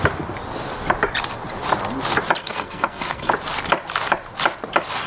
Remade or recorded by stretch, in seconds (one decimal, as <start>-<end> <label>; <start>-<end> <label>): 0.0-2.4 recorded; 2.4-3.3 remade; 3.3-5.1 recorded